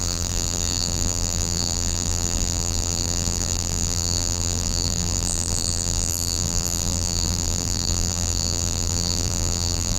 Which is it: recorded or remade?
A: remade